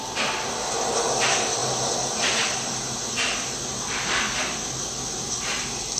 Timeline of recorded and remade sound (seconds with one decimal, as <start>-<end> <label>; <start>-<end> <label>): 0.0-6.0 recorded